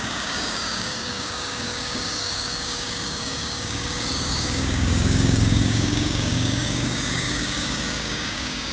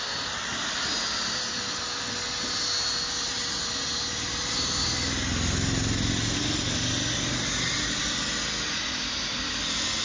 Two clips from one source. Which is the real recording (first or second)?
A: second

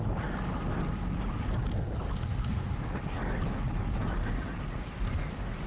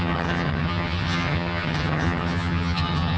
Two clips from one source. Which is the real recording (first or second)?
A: first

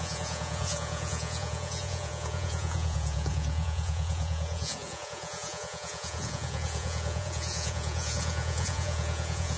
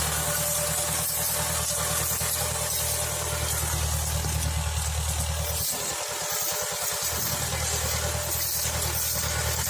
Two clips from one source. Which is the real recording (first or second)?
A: second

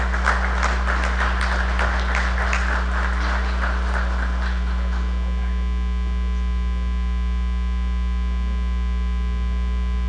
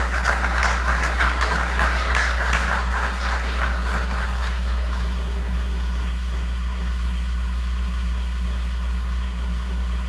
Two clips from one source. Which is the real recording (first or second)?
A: first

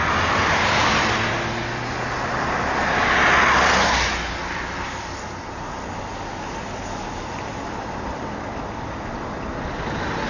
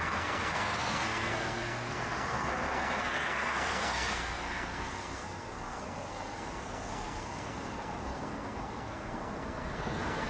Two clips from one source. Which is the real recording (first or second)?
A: first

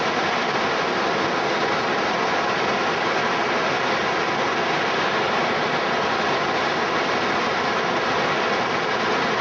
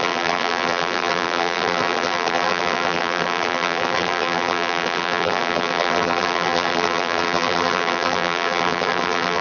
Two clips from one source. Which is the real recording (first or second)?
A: first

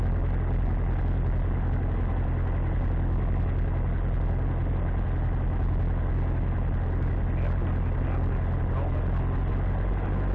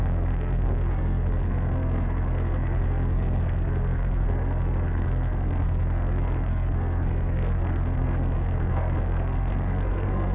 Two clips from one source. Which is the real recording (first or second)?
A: first